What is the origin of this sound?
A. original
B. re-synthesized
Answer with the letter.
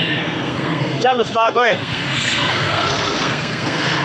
B